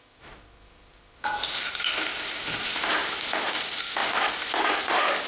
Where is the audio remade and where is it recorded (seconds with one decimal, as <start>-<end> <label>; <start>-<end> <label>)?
0.0-5.3 recorded